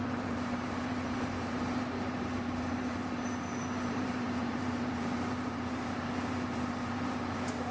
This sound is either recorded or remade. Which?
remade